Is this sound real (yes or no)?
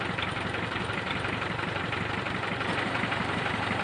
no